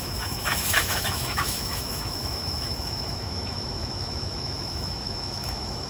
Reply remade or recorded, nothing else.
remade